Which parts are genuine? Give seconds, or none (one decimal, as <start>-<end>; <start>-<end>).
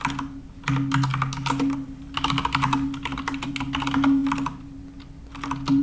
0.0-5.8